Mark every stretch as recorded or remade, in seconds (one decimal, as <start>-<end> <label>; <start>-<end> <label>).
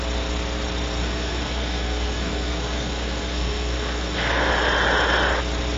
0.0-1.0 recorded; 1.0-4.5 remade; 4.5-5.8 recorded